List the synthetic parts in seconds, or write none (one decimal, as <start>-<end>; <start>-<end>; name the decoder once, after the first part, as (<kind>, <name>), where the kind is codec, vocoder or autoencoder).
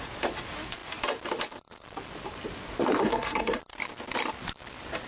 3.0-3.6 (codec, SNAC)